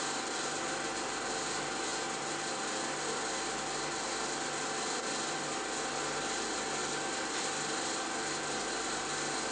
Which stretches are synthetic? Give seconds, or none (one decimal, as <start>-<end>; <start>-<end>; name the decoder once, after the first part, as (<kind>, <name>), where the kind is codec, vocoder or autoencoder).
none